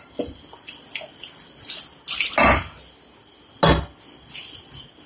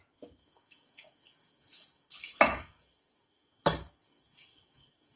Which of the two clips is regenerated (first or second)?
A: second